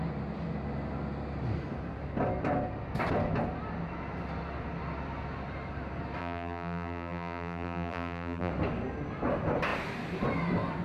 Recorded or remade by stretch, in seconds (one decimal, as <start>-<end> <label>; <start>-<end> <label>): 0.0-6.2 recorded; 6.2-8.5 remade; 8.5-10.8 recorded